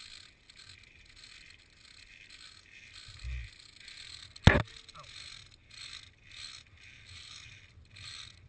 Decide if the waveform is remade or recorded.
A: recorded